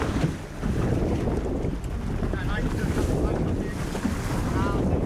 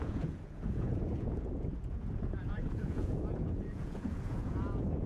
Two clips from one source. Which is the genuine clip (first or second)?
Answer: first